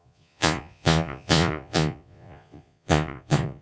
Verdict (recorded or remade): remade